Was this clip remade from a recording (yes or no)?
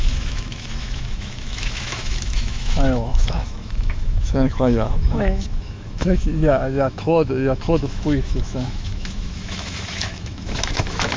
yes